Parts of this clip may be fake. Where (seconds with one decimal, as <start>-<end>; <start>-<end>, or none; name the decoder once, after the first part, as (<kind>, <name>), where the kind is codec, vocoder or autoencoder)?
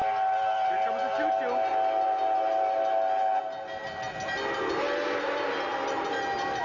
none